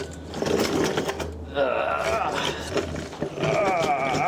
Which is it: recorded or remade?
recorded